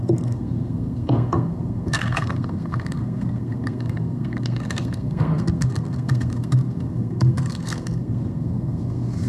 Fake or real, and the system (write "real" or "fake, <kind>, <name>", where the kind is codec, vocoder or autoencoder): fake, codec, SNAC